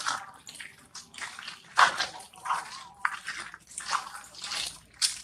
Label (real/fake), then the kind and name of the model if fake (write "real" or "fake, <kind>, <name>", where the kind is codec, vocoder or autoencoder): real